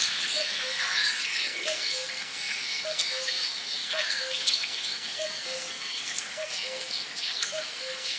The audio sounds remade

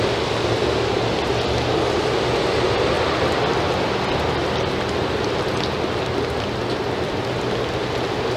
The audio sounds recorded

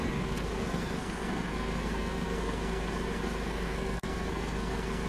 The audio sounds remade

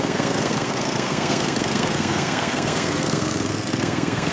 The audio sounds remade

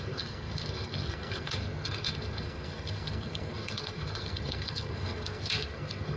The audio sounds remade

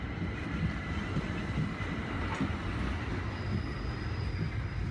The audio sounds recorded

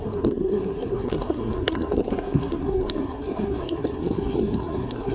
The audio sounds remade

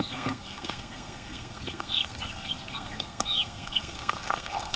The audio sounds remade